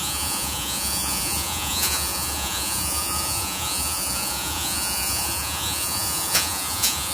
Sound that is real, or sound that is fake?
fake